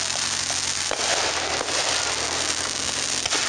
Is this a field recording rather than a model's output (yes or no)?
yes